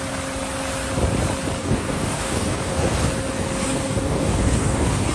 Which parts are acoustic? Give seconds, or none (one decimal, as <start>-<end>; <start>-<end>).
0.0-1.6; 3.1-3.6